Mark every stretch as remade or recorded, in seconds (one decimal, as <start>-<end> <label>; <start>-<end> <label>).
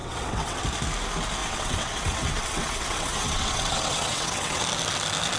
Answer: 0.0-0.6 remade; 0.6-1.4 recorded; 1.4-4.6 remade; 4.6-5.4 recorded